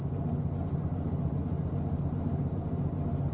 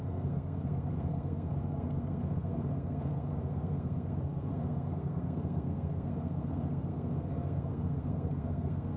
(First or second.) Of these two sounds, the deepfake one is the second